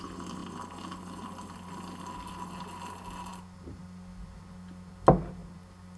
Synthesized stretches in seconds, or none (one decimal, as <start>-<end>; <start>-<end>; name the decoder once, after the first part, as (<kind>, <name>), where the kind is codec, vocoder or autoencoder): 3.3-3.8 (vocoder, BigVGAN v2); 5.4-6.0